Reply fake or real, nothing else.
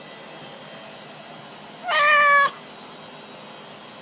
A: real